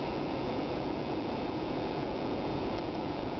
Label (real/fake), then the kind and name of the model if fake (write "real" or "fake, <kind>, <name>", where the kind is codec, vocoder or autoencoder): fake, vocoder, Vocos